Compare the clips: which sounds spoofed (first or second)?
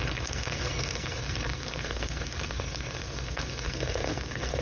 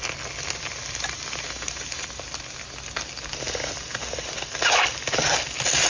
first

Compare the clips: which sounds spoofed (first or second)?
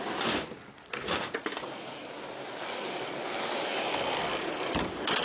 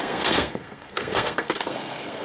second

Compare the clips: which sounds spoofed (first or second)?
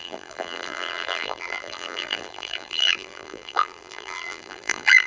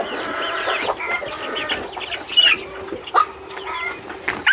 first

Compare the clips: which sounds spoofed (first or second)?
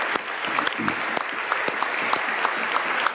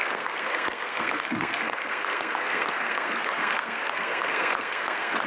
second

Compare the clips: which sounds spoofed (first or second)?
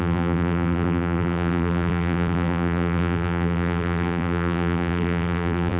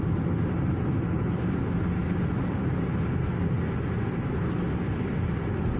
first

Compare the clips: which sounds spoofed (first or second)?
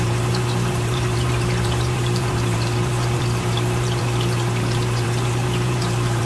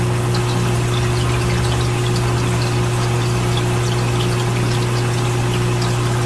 first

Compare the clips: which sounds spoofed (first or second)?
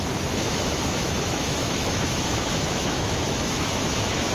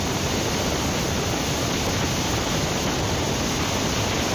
first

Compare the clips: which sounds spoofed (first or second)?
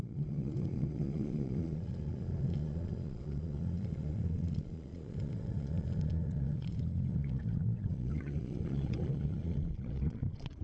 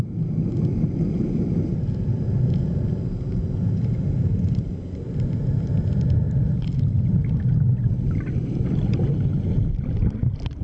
first